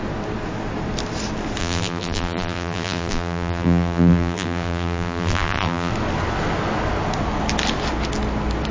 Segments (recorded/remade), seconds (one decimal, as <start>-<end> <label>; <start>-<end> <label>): 0.0-1.6 recorded; 1.6-5.9 remade; 5.9-8.7 recorded

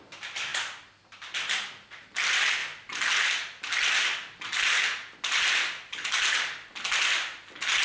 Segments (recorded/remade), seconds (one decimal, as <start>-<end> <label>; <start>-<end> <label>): 0.0-7.8 recorded